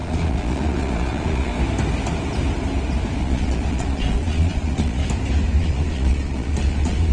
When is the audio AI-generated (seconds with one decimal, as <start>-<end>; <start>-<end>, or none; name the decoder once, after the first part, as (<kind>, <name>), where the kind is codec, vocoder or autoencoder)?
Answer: 0.0-1.5 (vocoder, Vocos); 3.2-5.0; 5.6-7.1